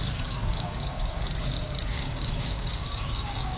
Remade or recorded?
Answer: remade